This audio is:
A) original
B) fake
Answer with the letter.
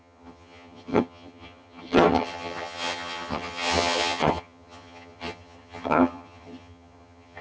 B